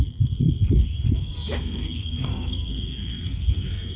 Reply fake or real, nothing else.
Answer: fake